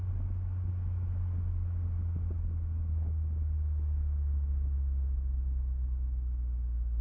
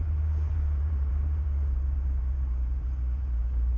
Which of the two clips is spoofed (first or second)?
second